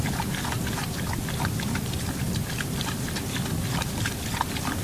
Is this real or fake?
real